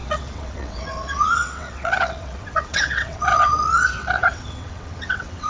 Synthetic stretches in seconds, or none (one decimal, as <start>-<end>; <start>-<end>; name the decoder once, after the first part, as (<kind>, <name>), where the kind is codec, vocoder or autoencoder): 0.0-5.5 (vocoder, WaveNeXt)